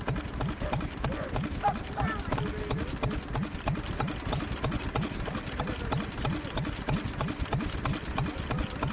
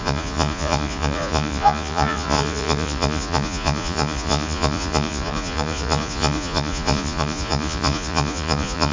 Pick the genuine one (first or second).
first